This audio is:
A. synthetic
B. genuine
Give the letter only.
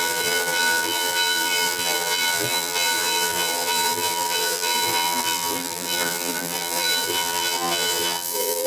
A